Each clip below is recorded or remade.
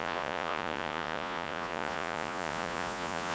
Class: remade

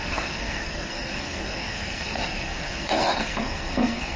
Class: remade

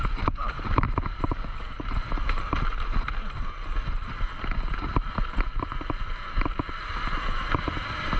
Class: recorded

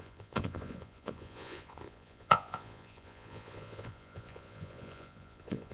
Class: remade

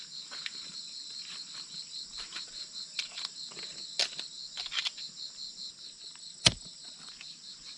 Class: recorded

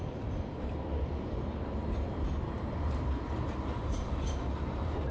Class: remade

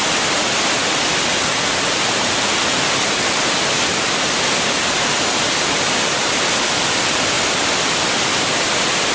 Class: recorded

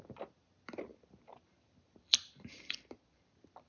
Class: remade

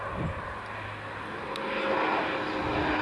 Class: recorded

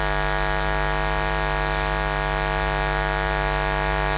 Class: recorded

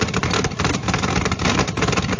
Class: recorded